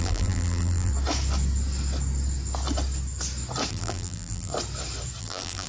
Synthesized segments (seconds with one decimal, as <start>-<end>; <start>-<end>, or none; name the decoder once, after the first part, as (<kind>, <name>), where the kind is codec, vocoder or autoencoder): 0.0-0.9 (vocoder, BigVGAN v2); 3.7-4.5; 5.2-5.7